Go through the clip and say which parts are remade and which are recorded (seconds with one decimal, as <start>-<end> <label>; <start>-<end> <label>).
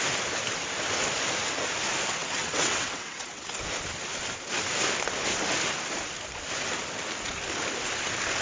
0.0-2.2 recorded; 2.2-3.6 remade; 3.6-8.4 recorded